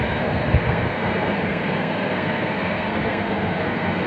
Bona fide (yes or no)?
no